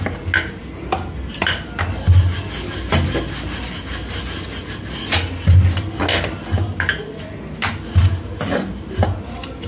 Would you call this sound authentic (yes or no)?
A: yes